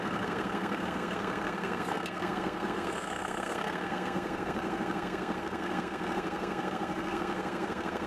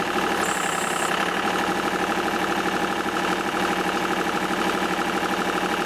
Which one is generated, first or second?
first